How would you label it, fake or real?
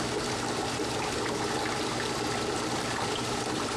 real